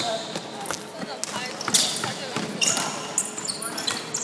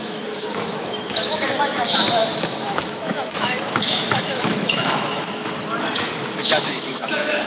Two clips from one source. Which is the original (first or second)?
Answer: first